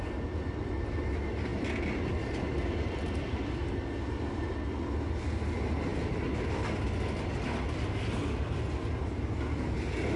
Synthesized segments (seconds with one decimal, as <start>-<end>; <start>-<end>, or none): none